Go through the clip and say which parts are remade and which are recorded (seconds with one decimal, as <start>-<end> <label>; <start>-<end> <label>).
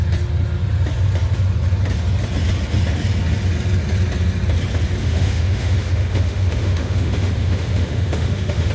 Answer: 0.0-5.0 recorded; 5.0-8.7 remade